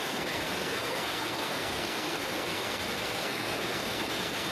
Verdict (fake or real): fake